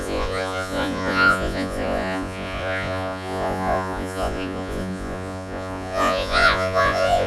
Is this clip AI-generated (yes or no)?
yes